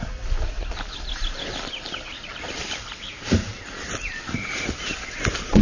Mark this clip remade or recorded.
recorded